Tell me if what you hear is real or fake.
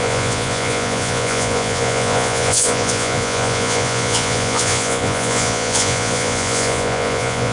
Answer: fake